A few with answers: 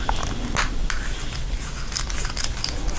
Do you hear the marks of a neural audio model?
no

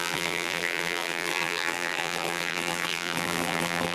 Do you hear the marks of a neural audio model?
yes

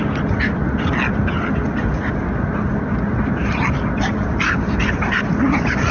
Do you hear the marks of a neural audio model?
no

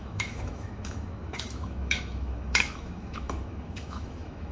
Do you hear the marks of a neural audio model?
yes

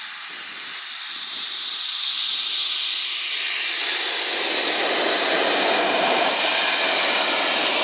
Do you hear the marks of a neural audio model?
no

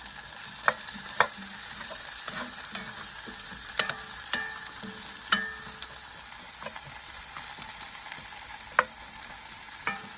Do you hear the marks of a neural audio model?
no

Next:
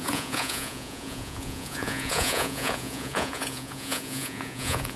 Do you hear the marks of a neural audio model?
yes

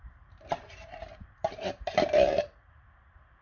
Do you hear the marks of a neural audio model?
yes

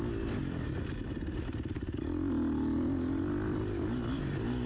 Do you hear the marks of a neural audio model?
no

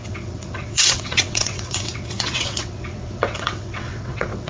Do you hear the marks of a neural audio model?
yes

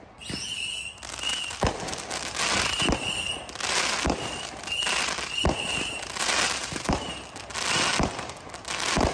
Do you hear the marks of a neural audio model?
no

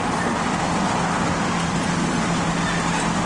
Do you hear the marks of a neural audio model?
no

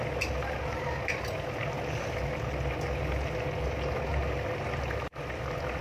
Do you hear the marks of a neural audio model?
no